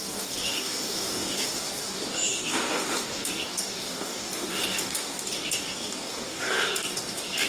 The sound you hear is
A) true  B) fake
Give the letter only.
B